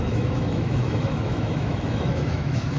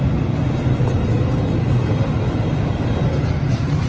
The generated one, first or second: first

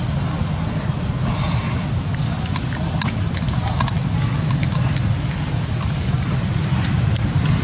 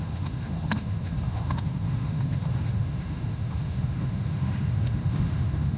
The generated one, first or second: second